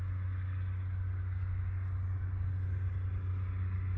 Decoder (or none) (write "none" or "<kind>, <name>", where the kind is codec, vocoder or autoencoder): none